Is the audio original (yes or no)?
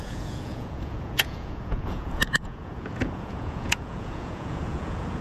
no